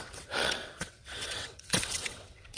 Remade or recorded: remade